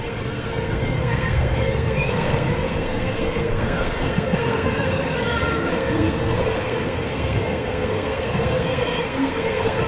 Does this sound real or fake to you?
fake